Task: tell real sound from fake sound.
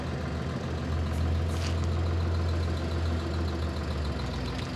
real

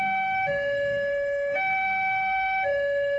fake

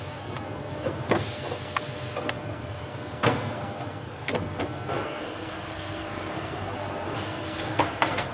fake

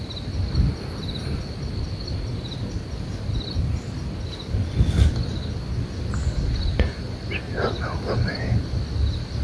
real